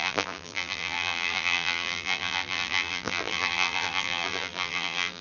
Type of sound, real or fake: fake